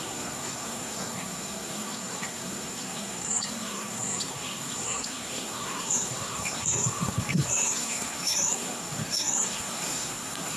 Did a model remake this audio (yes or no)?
yes